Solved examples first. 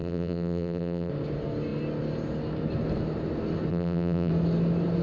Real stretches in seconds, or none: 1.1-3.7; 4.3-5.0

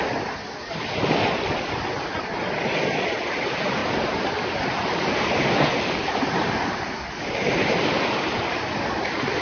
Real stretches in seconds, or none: 0.0-9.4

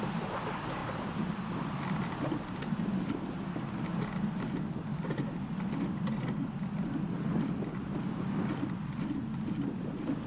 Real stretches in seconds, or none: 0.0-0.8; 3.8-10.3